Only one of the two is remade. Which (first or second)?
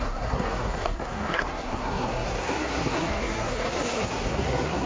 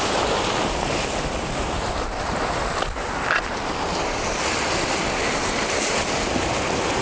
first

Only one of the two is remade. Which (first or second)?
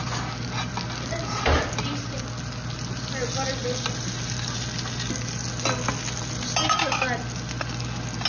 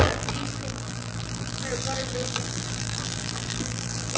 second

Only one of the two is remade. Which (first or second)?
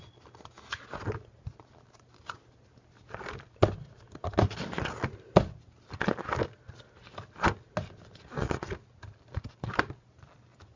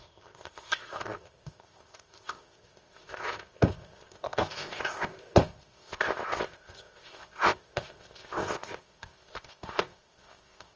second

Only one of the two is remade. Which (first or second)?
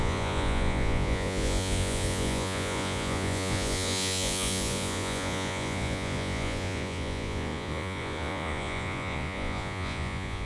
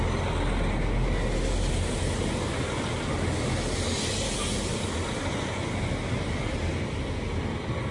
first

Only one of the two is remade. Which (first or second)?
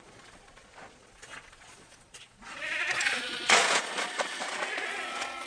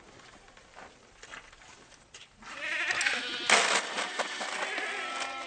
first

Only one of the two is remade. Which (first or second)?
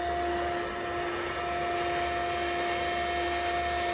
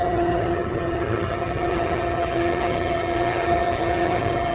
second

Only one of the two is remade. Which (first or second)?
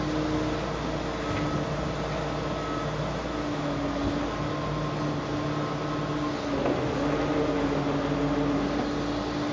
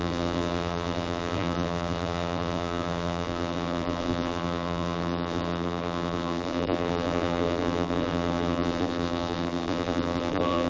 second